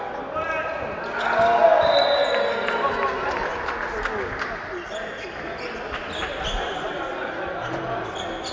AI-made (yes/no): no